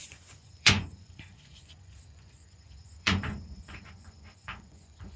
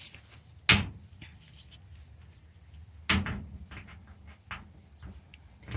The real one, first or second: second